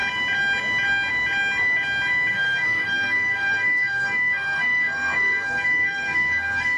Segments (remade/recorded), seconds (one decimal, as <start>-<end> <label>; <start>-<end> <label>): 0.0-2.3 recorded; 2.3-6.8 remade